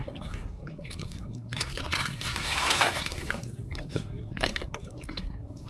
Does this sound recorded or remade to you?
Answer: remade